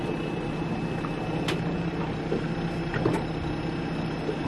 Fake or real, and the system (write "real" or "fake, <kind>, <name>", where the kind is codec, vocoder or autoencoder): real